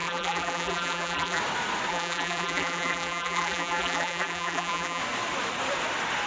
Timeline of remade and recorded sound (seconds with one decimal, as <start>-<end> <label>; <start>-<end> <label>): 0.0-1.4 remade; 1.4-1.9 recorded; 1.9-5.0 remade; 5.0-6.3 recorded